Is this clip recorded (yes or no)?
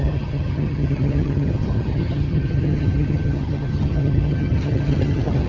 no